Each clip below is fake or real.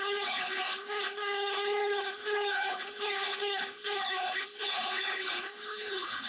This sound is fake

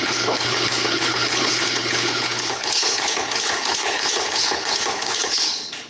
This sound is fake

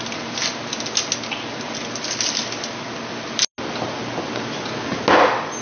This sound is real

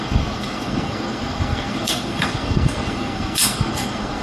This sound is fake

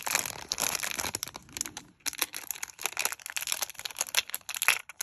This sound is real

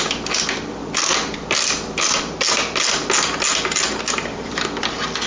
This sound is real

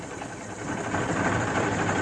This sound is real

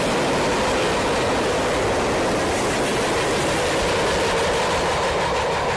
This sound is real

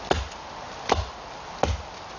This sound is real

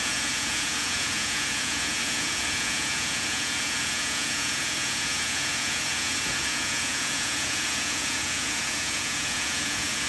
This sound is fake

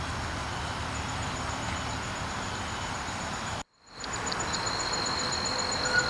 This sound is real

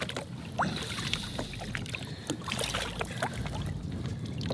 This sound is real